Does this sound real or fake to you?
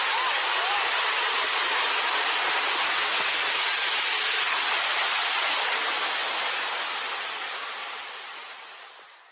real